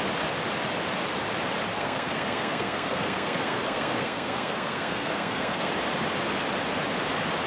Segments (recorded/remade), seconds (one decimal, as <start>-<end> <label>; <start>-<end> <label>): 0.0-1.7 recorded; 1.7-5.7 remade; 5.7-7.5 recorded